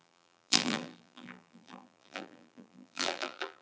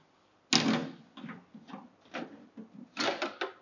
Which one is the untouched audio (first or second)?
second